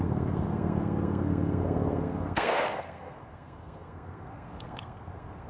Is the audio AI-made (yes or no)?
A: yes